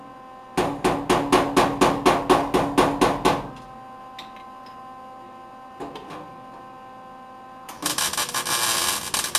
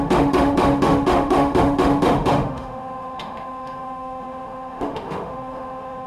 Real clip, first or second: first